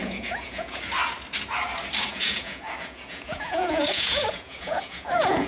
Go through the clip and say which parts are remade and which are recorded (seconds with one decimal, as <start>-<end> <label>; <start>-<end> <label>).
0.0-0.8 remade; 0.8-2.1 recorded; 2.1-5.5 remade